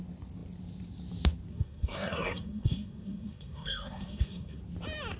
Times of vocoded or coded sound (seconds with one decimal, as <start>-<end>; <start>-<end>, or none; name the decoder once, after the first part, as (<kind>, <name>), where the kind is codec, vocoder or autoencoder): 1.5-4.6 (codec, SNAC)